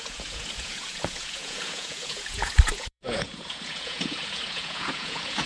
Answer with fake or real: fake